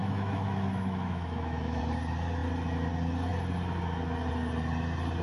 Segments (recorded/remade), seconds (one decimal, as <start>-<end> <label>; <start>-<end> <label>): 0.0-1.8 remade; 1.8-5.2 recorded